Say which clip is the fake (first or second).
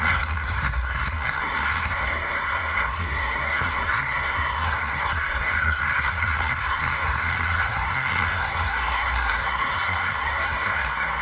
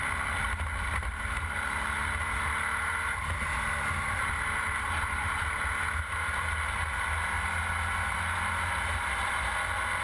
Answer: first